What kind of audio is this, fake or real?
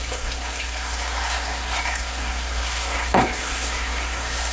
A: fake